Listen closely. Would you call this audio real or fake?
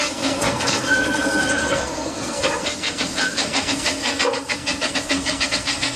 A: fake